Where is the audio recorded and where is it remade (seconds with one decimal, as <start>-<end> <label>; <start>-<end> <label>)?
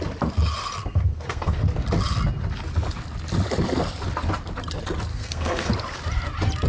0.0-0.8 recorded; 0.8-1.6 remade; 1.6-5.1 recorded; 5.1-5.7 remade; 5.7-6.7 recorded